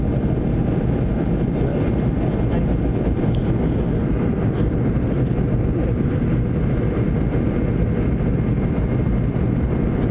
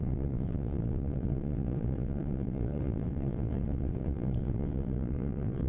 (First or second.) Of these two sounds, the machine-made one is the second